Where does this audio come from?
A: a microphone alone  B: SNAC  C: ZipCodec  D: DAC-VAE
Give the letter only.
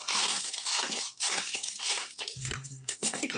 B